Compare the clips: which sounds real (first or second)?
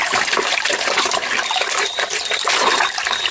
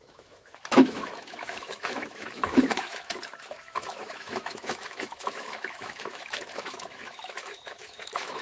first